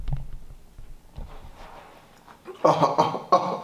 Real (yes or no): yes